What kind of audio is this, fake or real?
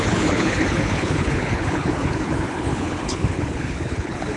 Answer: fake